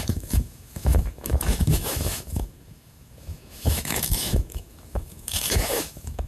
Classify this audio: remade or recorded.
remade